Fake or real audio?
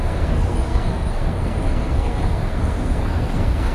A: fake